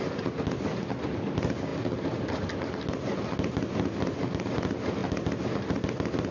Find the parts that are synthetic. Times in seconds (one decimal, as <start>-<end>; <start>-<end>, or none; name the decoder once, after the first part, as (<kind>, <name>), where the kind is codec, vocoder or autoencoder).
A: none